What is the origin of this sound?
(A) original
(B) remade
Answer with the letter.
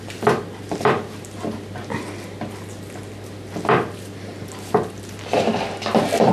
A